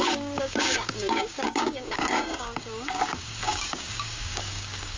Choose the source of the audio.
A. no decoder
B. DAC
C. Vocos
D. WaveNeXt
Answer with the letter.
B